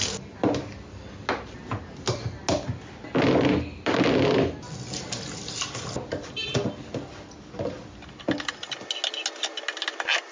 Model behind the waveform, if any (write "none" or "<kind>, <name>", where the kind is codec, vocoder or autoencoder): none